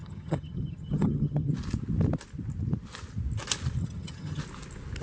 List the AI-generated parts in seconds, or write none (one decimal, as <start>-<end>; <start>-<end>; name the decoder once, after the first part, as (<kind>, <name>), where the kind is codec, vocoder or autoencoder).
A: 0.0-1.5 (vocoder, HiFi-GAN); 3.8-4.4